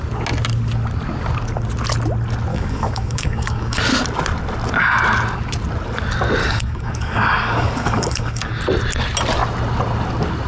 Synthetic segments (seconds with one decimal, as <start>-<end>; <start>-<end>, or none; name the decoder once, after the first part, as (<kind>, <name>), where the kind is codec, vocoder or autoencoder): 2.5-3.8 (codec, DAC); 6.4-8.6